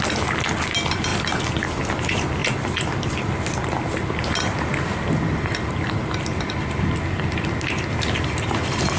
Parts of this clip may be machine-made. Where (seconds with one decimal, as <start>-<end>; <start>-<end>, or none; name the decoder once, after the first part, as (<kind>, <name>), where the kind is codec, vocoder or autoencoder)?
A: 2.4-3.1 (vocoder, BigVGAN v2); 4.0-7.5